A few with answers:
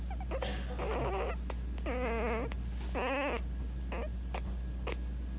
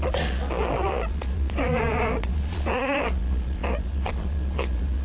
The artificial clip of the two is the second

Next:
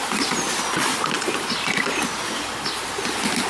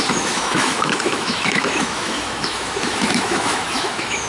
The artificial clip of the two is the second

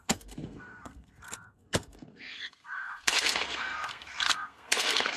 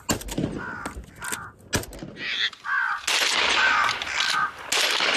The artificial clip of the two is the first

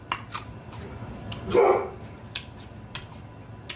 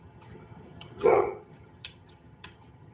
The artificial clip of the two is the second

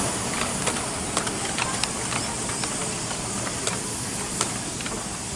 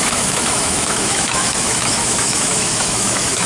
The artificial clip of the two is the second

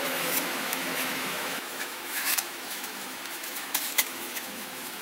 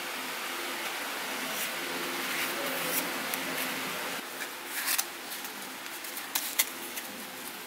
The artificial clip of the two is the first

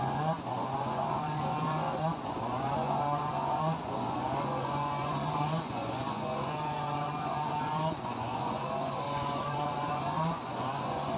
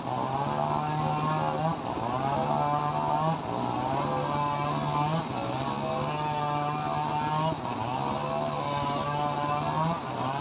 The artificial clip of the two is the first